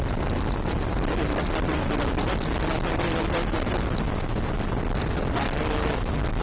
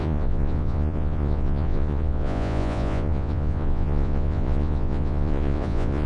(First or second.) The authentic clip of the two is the first